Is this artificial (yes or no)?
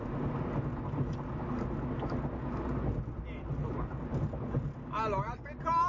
no